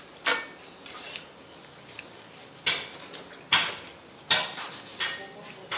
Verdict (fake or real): real